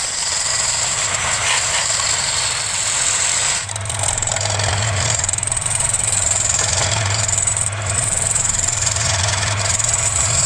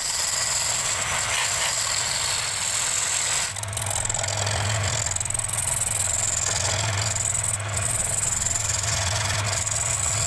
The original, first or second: second